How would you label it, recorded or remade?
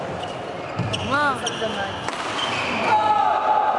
recorded